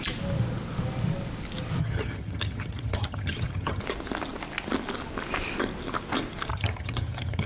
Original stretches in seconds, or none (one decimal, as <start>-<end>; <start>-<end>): 0.0-1.8; 3.8-6.5